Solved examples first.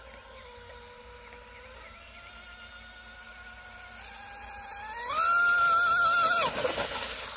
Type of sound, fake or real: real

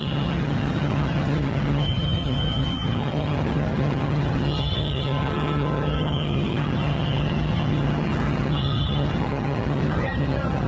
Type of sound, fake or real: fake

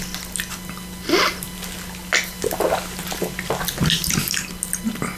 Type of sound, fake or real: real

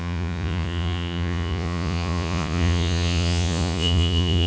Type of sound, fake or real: fake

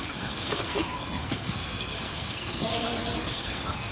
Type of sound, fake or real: fake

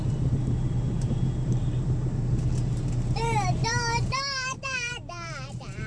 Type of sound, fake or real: fake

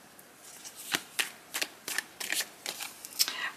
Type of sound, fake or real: real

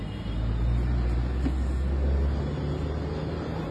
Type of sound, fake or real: real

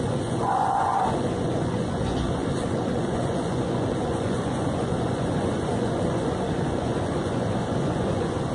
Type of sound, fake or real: fake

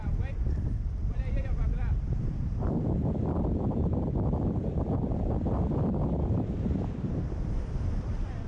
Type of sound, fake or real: fake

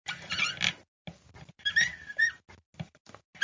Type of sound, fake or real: real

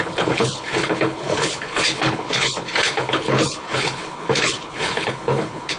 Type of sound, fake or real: fake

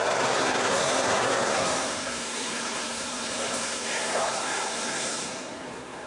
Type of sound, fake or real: fake